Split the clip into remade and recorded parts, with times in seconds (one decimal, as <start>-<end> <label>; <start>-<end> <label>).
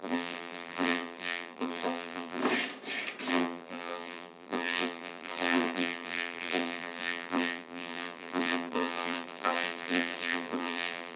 0.0-2.4 remade; 2.4-3.3 recorded; 3.3-11.2 remade